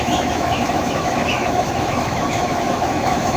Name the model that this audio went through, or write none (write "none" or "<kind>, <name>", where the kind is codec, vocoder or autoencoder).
autoencoder, DAC-VAE